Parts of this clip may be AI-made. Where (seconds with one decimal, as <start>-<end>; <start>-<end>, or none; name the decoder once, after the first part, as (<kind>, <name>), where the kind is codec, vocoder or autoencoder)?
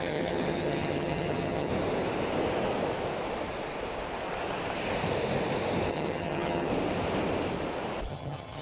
0.0-1.7 (vocoder, HiFi-GAN); 5.9-6.7; 8.1-8.6